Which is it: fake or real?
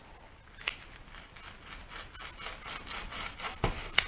real